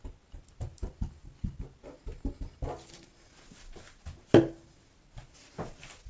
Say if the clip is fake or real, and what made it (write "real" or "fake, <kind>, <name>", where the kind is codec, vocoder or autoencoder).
real